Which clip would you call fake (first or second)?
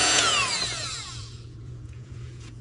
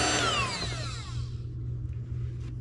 first